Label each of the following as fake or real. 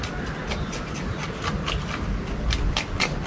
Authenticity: real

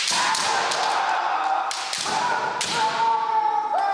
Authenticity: real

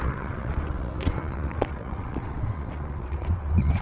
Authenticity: fake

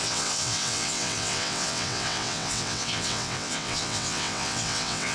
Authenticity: fake